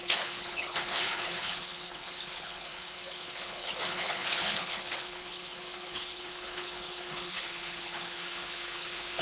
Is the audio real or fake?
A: fake